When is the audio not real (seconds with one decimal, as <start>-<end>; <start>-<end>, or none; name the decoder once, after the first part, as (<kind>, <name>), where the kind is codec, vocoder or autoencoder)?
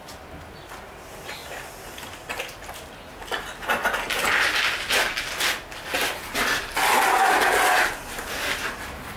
none